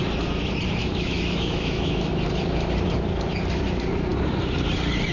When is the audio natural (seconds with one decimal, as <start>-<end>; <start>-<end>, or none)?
0.0-0.8; 2.1-5.1